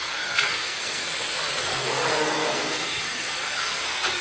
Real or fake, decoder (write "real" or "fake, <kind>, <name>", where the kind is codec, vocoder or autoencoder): fake, codec, SNAC